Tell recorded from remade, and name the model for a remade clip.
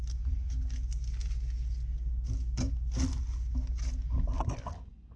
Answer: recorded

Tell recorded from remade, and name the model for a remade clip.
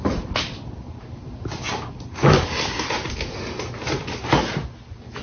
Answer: recorded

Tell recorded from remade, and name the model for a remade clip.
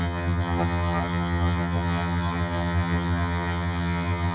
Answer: remade, vocoder, HiFi-GAN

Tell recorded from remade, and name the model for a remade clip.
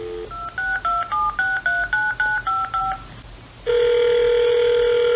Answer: recorded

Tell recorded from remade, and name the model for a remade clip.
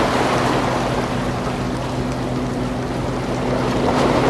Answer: recorded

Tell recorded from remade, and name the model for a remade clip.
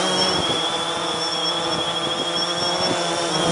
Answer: recorded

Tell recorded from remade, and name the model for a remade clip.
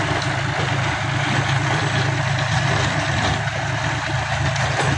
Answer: recorded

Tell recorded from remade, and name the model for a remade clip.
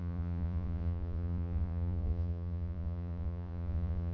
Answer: remade, vocoder, Vocos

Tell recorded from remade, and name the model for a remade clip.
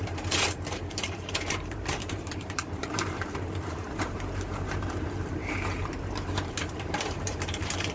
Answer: remade, vocoder, BigVGAN v2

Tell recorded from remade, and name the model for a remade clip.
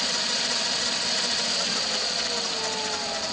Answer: recorded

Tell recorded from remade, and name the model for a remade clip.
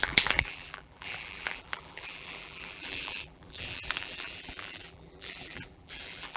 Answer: remade, vocoder, BigVGAN v2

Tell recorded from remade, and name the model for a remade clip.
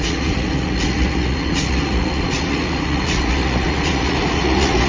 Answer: remade, vocoder, Vocos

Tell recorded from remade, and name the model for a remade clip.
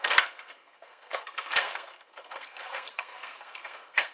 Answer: remade, codec, SNAC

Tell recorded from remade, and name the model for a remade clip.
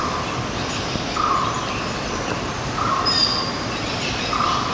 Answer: recorded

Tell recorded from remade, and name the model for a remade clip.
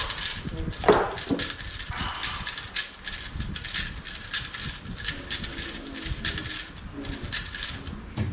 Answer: recorded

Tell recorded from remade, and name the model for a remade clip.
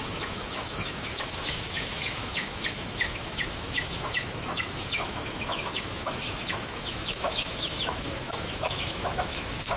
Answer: remade, autoencoder, DAC-VAE